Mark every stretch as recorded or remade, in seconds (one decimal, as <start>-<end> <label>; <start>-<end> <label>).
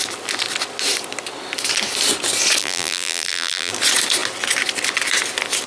0.0-2.6 recorded; 2.6-3.7 remade; 3.7-5.7 recorded